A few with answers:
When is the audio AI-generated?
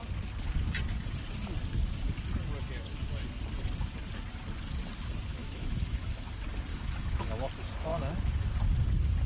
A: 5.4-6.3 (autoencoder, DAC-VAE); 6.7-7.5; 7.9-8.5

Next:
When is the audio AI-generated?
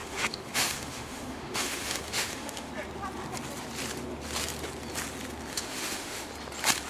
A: 0.0-2.7 (autoencoder, DAC-VAE); 5.5-6.3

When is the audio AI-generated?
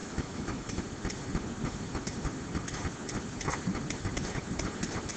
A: 0.0-0.8 (autoencoder, DAC-VAE)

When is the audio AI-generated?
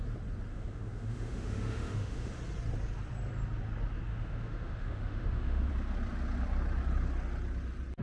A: 0.5-2.4 (autoencoder, DAC-VAE); 4.1-5.7